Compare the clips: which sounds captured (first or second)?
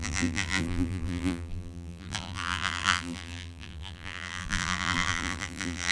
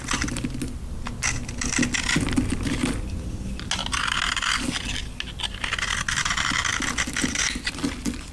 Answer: second